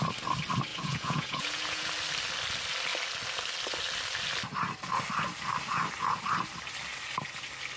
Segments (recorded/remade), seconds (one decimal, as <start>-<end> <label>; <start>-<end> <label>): 0.0-0.7 recorded; 0.7-1.9 remade; 1.9-7.8 recorded

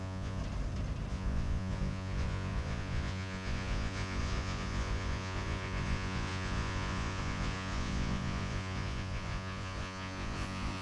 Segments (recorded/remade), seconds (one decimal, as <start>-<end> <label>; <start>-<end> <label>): 0.0-0.4 remade; 0.4-1.1 recorded; 1.1-10.8 remade